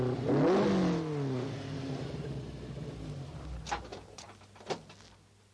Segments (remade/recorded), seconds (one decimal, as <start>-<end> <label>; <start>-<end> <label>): 0.0-3.9 recorded; 3.9-4.4 remade; 4.4-5.5 recorded